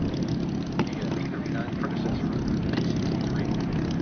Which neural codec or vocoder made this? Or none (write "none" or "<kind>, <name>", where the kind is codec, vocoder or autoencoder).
none